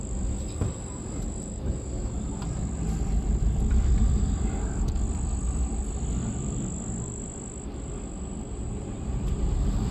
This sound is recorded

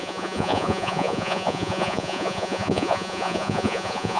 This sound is remade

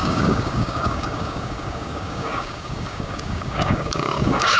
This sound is remade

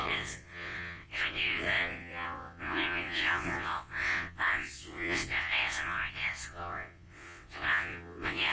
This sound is remade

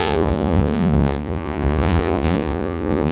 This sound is remade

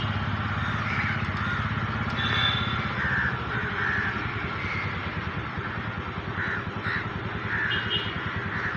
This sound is recorded